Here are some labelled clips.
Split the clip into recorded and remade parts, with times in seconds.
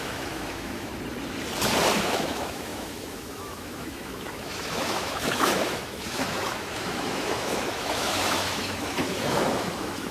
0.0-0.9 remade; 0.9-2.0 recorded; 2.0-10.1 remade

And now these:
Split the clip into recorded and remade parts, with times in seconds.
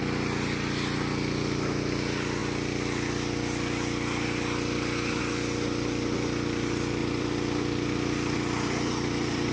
0.0-7.0 recorded; 7.0-9.5 remade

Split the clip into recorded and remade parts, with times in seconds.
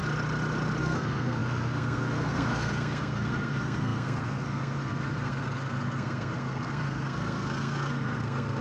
0.0-0.8 recorded; 0.8-8.6 remade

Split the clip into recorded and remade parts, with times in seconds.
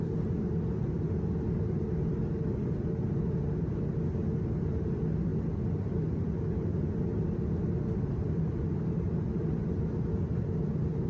0.0-11.1 recorded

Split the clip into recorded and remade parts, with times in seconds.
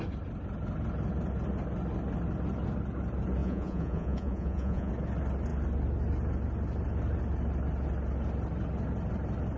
0.0-3.4 recorded; 3.4-4.9 remade; 4.9-9.6 recorded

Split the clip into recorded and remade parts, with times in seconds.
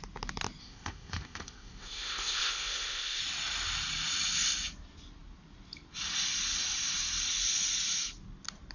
0.0-0.6 recorded; 0.6-3.2 remade; 3.2-8.7 recorded